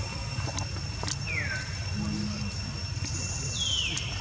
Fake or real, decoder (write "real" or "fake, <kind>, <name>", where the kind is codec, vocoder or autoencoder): real